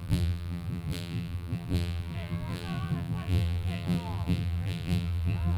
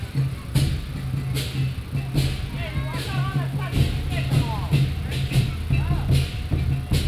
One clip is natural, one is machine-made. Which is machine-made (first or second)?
first